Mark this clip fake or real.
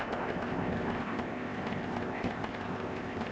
fake